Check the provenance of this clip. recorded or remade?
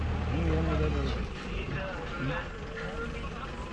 recorded